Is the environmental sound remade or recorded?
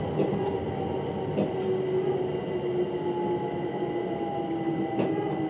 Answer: recorded